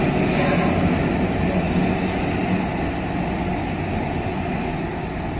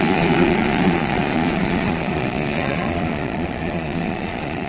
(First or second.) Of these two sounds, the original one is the first